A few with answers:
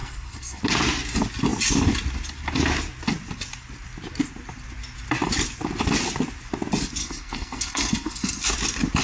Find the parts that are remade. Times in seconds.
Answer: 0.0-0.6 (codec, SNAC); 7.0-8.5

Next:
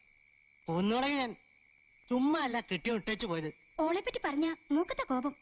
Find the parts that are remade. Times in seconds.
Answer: 1.9-5.0 (vocoder, Vocos)

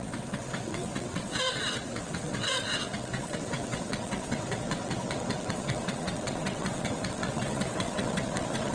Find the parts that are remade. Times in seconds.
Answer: 0.0-8.7 (vocoder, WaveNeXt)